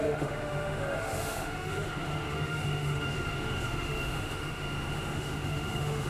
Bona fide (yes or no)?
no